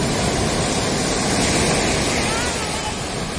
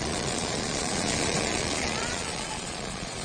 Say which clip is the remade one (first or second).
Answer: second